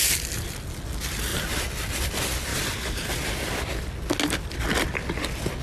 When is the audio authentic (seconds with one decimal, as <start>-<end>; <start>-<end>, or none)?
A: 0.0-1.3; 2.0-2.5; 3.6-5.6